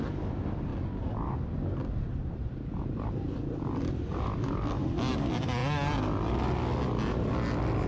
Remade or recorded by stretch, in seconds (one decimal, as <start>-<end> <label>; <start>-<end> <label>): 0.0-0.7 recorded; 0.7-3.6 remade; 3.6-7.9 recorded